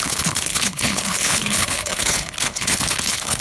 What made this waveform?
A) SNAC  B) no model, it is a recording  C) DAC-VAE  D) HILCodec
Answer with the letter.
D